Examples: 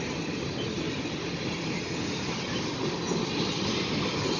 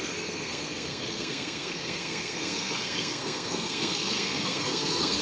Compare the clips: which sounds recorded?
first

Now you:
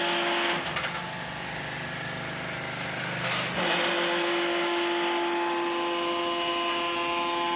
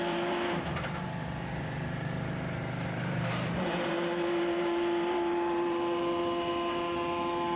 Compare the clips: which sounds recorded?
first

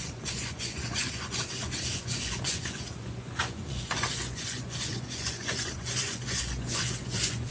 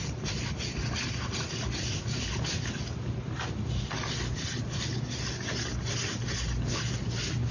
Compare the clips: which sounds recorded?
second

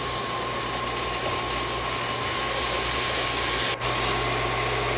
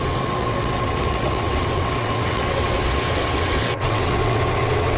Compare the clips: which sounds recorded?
first